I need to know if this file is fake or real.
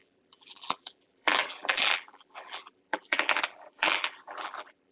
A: fake